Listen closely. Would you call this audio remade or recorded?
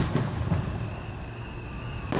recorded